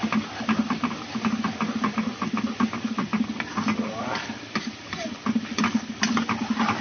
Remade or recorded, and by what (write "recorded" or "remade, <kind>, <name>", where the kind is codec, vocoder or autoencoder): recorded